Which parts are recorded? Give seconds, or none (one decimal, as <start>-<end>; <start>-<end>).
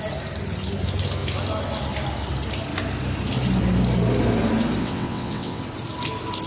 0.0-4.8; 5.6-6.5